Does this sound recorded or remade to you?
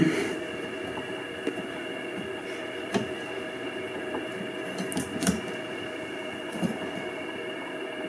recorded